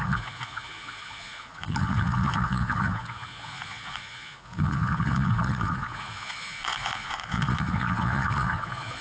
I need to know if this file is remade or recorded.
remade